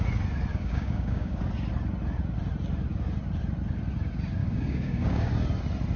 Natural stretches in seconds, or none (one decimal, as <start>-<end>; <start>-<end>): 0.0-0.5; 1.4-4.4; 5.3-6.0